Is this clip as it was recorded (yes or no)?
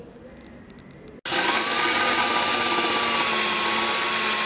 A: yes